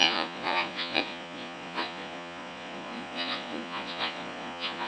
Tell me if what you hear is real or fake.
fake